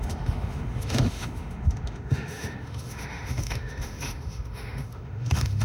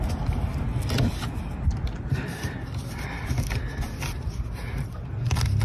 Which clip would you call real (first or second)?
second